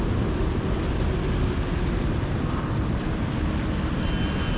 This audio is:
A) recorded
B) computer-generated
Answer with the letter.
A